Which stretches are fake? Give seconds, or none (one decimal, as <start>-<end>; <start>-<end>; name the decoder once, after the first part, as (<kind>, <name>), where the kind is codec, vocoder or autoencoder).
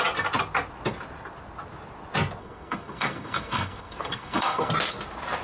2.4-4.7 (codec, SNAC)